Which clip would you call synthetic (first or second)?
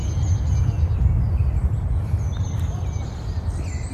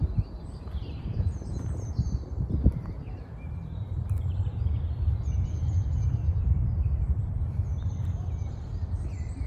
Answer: second